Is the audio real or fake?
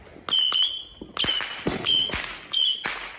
real